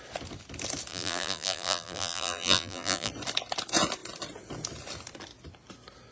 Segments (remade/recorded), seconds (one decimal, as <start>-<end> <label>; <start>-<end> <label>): 0.0-0.9 recorded; 0.9-3.1 remade; 3.1-6.1 recorded